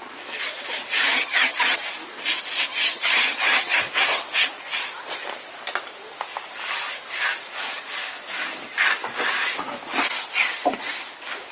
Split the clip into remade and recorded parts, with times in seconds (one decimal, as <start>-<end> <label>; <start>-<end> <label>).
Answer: 0.0-1.1 recorded; 1.1-1.9 remade; 1.9-2.7 recorded; 2.7-3.8 remade; 3.8-11.5 recorded